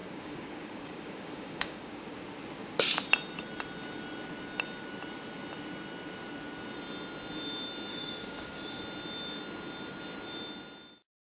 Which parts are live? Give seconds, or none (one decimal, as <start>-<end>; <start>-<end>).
2.1-7.9; 8.8-11.2